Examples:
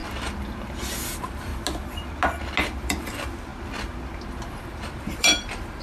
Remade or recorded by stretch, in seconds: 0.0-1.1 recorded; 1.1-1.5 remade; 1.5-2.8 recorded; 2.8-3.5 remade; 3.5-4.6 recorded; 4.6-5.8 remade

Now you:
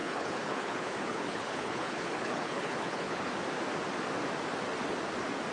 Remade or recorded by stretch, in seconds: 0.0-3.3 remade; 3.3-5.5 recorded

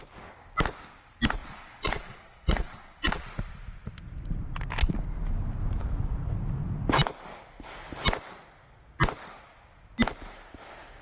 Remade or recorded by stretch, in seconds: 0.0-1.4 recorded; 1.4-3.2 remade; 3.2-11.0 recorded

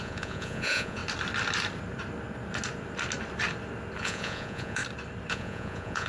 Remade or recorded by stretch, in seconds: 0.0-1.0 remade; 1.0-4.0 recorded; 4.0-4.8 remade; 4.8-5.3 recorded; 5.3-6.1 remade

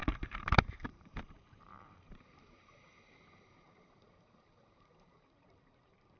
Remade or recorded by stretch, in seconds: 0.0-6.2 remade

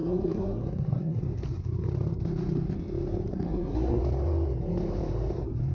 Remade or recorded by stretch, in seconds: 0.0-1.2 remade; 1.2-3.3 recorded; 3.3-4.0 remade; 4.0-5.7 recorded